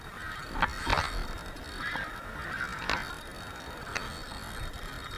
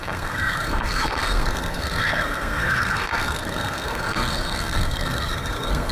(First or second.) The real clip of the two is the first